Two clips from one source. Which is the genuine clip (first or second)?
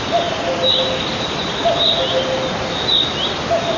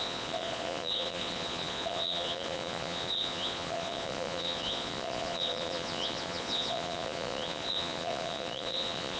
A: first